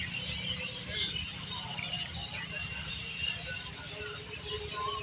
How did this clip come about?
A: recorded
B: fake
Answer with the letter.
A